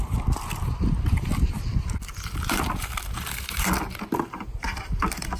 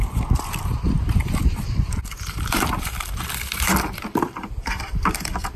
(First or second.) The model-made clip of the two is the second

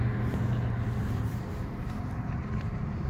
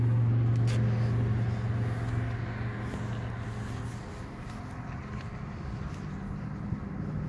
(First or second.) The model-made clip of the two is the first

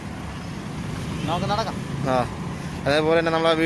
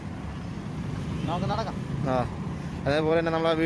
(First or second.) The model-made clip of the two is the second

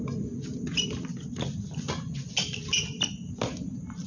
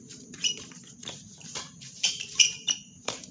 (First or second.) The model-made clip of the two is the second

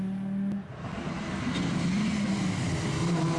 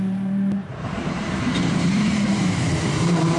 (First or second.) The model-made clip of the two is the second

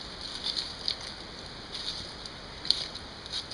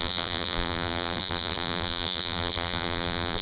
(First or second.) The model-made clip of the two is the second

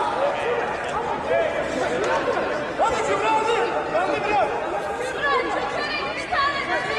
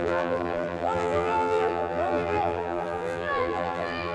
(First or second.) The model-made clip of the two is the second